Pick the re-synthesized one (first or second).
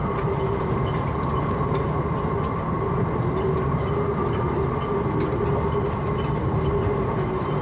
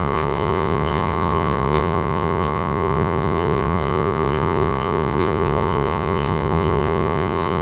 second